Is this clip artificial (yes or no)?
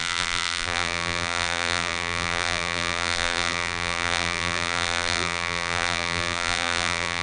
yes